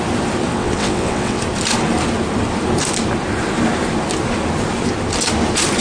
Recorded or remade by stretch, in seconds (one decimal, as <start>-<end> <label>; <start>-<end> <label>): 0.0-0.5 recorded; 0.5-1.4 remade; 1.4-5.8 recorded